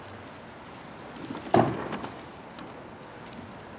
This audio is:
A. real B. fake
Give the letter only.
A